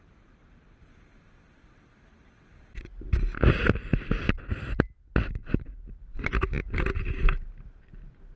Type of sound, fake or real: real